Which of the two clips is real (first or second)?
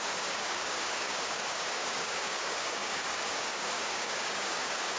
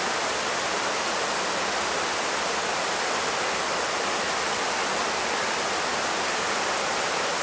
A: second